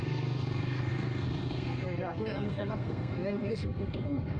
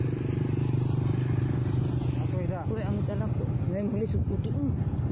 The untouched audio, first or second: second